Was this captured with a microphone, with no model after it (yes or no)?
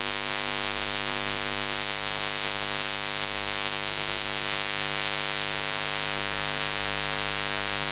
no